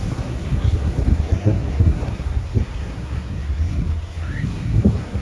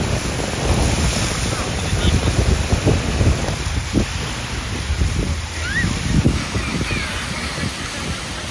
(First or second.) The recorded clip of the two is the second